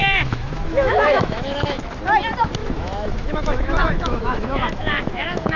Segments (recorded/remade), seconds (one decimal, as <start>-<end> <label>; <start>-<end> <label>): 0.0-1.8 remade; 1.8-2.6 recorded; 2.6-5.6 remade